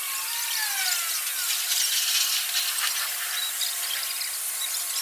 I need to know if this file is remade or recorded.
recorded